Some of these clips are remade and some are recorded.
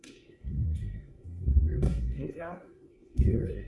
remade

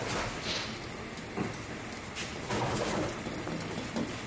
recorded